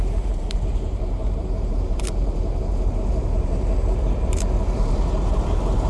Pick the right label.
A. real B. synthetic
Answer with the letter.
B